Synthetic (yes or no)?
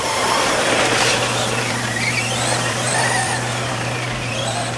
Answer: yes